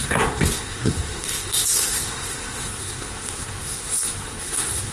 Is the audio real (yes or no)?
no